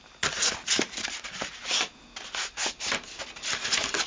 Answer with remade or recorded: recorded